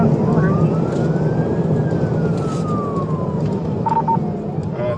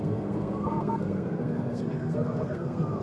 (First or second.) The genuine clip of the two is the first